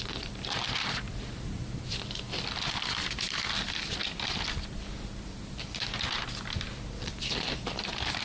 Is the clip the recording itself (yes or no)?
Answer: no